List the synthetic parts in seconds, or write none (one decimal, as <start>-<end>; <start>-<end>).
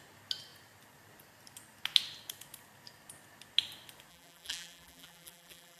4.1-5.8